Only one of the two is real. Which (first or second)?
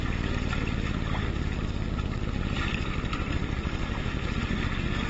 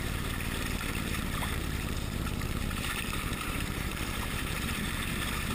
first